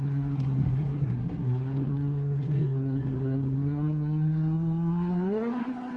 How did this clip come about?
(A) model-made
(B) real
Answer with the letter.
A